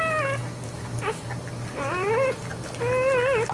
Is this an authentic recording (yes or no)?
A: yes